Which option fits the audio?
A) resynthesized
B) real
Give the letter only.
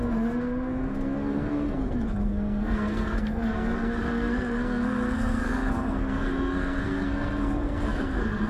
A